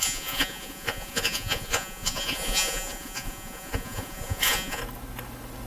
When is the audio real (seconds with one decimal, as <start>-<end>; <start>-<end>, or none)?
4.8-5.7